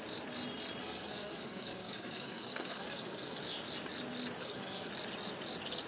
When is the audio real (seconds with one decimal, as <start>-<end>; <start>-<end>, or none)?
0.0-0.8; 3.4-4.4; 4.9-5.9

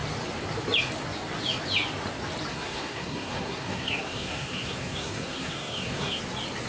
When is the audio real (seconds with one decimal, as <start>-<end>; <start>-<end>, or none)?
0.0-2.5; 6.2-6.7

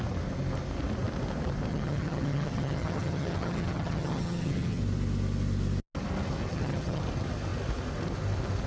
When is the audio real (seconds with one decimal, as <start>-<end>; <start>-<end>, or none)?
0.0-1.7; 4.8-6.5; 7.0-8.7